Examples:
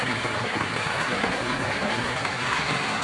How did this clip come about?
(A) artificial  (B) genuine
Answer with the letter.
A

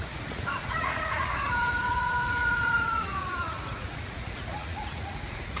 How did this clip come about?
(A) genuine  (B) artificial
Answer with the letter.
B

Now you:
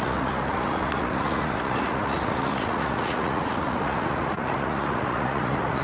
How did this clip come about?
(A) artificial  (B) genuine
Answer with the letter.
A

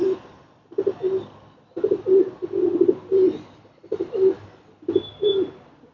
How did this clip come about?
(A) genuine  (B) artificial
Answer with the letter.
A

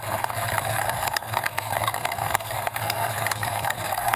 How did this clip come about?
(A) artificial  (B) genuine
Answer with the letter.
A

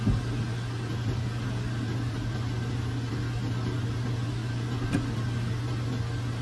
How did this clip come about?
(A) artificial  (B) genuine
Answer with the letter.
B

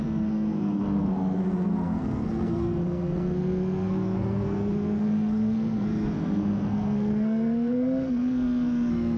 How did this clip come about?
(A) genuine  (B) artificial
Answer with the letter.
B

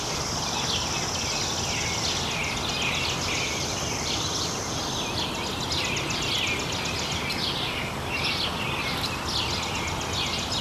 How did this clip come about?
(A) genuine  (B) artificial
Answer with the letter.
A